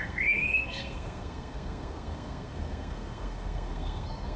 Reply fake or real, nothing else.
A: fake